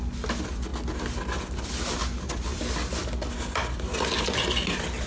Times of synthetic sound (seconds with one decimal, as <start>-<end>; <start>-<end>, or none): none